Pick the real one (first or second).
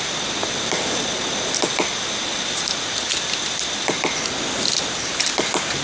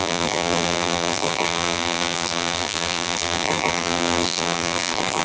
first